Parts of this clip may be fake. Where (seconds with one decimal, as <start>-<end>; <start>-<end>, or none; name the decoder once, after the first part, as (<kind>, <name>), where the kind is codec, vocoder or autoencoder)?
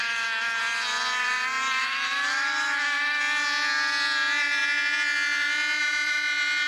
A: 0.0-0.6 (autoencoder, DAC-VAE); 1.8-3.2